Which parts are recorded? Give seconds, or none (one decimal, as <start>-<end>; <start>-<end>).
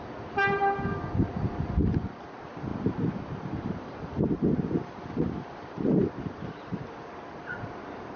0.0-2.7; 4.7-8.2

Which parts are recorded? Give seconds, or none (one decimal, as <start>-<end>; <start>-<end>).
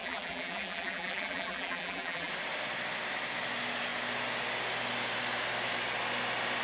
2.3-6.6